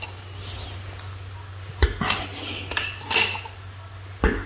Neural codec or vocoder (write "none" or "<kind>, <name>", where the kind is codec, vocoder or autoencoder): none